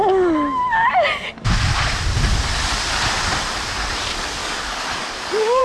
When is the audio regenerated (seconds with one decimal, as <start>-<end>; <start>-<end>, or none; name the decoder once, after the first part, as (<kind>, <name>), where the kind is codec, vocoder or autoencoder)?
4.4-5.6 (codec, DAC)